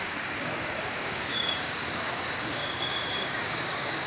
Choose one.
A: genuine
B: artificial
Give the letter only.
B